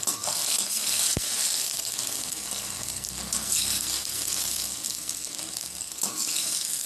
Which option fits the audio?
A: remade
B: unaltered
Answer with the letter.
A